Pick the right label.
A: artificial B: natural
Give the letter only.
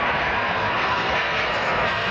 A